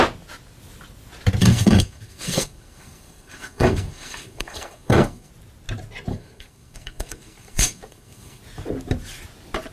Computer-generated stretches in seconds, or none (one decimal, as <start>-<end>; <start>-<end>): 1.4-5.3; 6.1-8.4

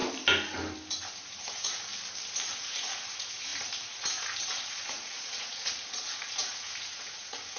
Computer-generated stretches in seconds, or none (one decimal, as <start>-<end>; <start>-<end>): 1.1-1.9; 2.4-7.6

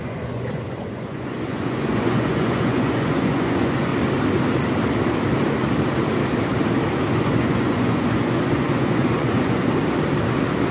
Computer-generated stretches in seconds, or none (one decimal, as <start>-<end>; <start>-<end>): 0.0-3.9; 7.1-9.6

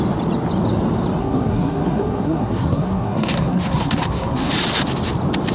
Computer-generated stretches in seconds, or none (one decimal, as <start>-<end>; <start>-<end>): 1.2-4.5

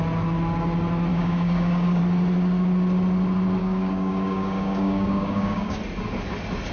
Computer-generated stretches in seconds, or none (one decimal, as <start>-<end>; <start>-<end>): 1.1-2.0; 3.6-5.8

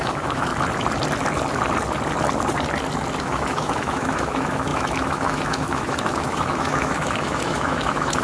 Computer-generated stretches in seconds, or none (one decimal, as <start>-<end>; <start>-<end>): 0.0-0.5; 3.2-8.2

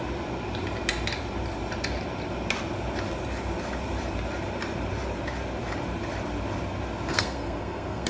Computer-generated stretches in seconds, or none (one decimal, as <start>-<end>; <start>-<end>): 7.1-8.1

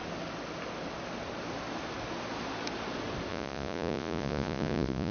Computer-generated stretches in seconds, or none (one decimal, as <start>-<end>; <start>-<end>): 3.3-5.1